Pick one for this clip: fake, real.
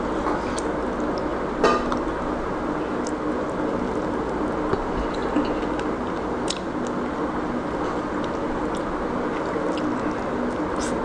real